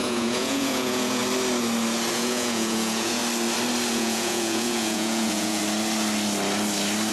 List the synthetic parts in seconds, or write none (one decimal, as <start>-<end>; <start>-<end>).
0.0-1.2; 2.1-3.2; 3.9-5.6